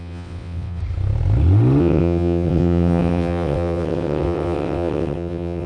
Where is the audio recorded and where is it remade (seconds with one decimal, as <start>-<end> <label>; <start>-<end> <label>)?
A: 0.0-0.8 remade; 0.8-1.8 recorded; 1.8-5.7 remade